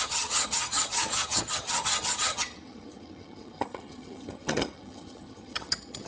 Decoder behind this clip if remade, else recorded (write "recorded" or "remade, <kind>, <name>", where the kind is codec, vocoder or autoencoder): remade, vocoder, HiFi-GAN